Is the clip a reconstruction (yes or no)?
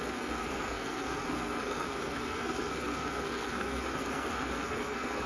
yes